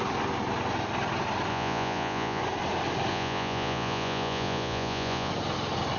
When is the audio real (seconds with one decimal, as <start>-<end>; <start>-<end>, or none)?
0.0-1.5; 2.4-3.1; 5.3-6.0